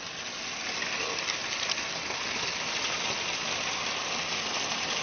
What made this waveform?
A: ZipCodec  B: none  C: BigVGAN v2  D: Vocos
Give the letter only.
B